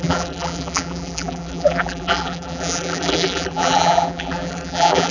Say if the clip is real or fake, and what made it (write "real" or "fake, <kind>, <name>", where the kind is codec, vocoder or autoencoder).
fake, vocoder, BigVGAN v2